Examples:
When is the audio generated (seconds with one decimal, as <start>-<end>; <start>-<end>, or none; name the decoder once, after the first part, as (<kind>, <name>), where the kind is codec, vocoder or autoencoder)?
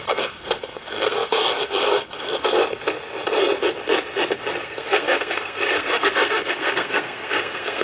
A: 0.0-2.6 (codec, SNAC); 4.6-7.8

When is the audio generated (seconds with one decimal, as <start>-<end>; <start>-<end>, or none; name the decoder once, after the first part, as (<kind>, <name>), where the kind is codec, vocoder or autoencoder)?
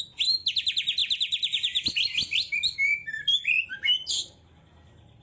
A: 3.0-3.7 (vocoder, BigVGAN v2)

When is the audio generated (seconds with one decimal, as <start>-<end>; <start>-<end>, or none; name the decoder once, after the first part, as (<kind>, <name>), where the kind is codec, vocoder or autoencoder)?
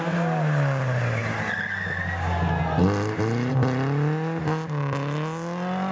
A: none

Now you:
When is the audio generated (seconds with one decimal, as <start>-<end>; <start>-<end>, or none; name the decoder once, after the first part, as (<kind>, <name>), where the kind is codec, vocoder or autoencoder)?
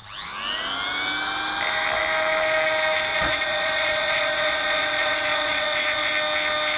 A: 3.1-6.1 (vocoder, Vocos)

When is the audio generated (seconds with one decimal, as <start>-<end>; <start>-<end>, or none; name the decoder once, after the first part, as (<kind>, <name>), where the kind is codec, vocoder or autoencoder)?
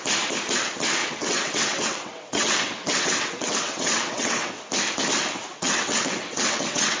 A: 1.0-4.5 (vocoder, WaveNeXt); 5.5-7.0